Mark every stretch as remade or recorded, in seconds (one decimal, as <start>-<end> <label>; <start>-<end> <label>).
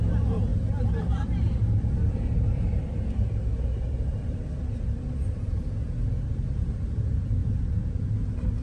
0.0-0.5 recorded; 0.5-5.1 remade; 5.1-7.4 recorded; 7.4-8.1 remade; 8.1-8.6 recorded